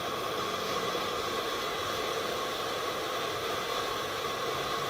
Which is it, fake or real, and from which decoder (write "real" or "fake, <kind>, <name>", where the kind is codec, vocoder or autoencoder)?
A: fake, vocoder, BigVGAN v2